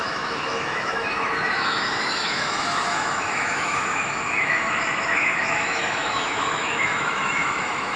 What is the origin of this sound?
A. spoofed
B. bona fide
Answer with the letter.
A